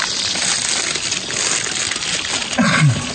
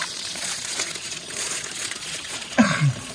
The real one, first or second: first